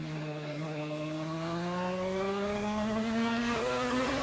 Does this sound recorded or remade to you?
remade